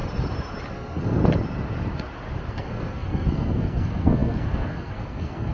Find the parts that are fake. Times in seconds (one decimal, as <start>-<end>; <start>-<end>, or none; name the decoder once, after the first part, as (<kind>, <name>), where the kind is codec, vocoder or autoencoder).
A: 0.7-1.2 (codec, SNAC); 2.5-5.5